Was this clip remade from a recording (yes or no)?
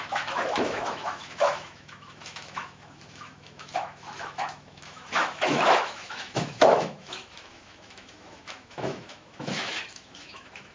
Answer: yes